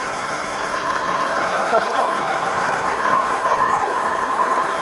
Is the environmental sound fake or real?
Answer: fake